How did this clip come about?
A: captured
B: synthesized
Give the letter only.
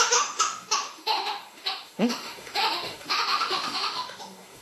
B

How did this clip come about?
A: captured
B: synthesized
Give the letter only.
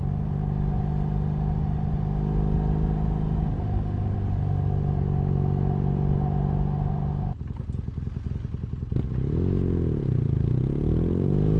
A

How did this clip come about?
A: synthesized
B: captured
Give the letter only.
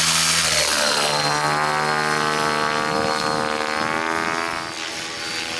B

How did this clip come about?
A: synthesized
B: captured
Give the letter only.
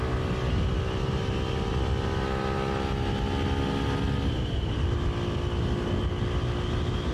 B